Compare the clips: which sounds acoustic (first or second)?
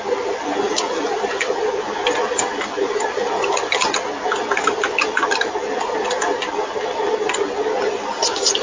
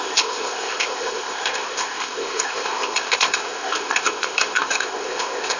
first